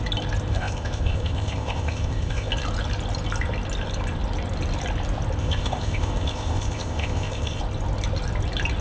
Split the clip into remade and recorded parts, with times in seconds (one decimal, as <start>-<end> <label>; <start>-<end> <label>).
0.0-0.5 recorded; 0.5-2.5 remade; 2.5-5.4 recorded; 5.4-7.6 remade; 7.6-8.8 recorded